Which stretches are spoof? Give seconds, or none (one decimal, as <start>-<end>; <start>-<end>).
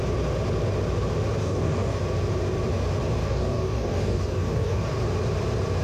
1.4-2.0; 3.2-5.0